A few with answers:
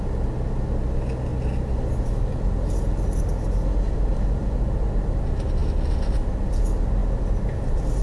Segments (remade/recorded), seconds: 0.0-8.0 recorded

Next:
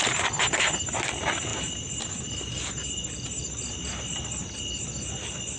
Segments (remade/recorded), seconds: 0.0-5.6 recorded

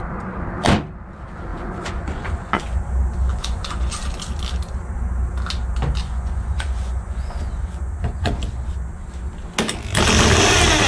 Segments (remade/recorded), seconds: 0.0-1.5 recorded; 1.5-2.8 remade; 2.8-3.3 recorded; 3.3-3.9 remade; 3.9-6.0 recorded; 6.0-8.3 remade; 8.3-10.9 recorded

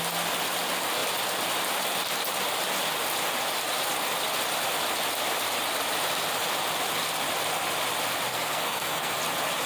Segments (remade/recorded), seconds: 0.0-8.3 recorded; 8.3-9.2 remade; 9.2-9.7 recorded

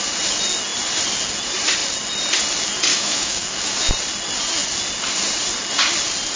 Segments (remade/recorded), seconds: 0.0-2.9 recorded; 2.9-3.9 remade; 3.9-6.4 recorded